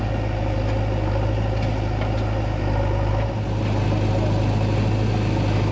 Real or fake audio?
real